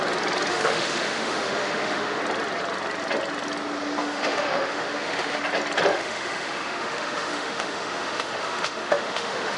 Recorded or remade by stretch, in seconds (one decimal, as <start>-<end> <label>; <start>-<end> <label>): 0.0-0.5 recorded; 0.5-2.2 remade; 2.2-4.0 recorded; 4.0-5.4 remade; 5.4-5.9 recorded; 5.9-9.6 remade